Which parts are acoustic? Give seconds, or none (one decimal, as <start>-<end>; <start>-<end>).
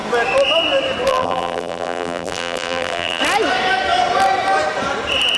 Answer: 0.0-1.1; 3.2-5.4